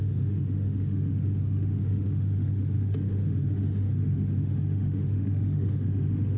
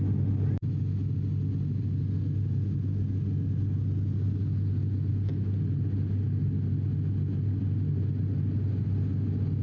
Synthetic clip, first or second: first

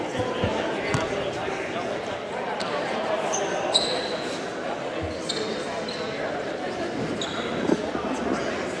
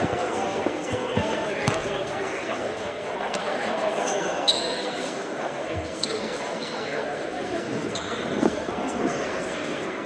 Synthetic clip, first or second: second